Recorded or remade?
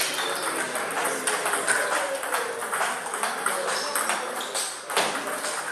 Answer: recorded